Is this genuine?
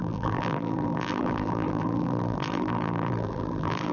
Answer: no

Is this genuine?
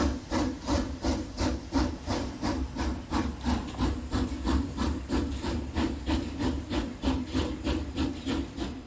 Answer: yes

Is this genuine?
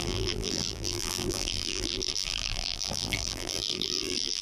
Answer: no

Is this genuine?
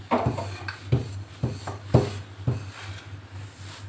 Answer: yes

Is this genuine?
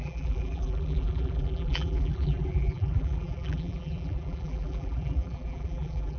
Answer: no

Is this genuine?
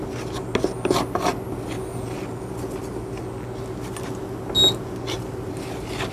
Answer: yes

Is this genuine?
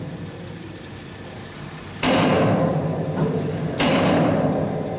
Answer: no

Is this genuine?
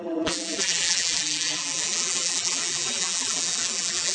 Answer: no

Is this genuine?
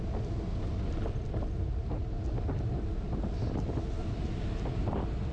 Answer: yes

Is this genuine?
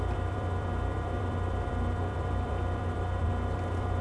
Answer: no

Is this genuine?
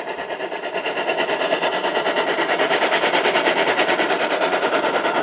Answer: no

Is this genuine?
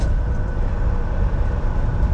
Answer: yes